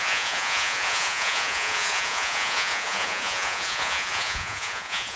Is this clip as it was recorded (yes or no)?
no